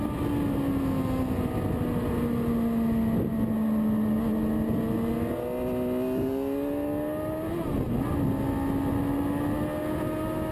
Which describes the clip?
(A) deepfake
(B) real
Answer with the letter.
B